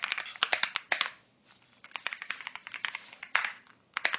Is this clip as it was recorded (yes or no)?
no